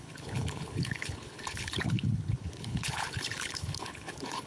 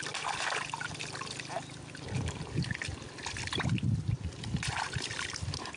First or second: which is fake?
first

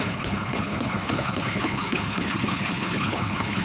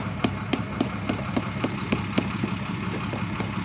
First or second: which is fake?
first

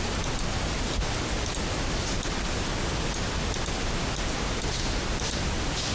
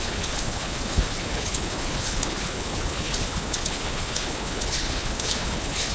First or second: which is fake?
second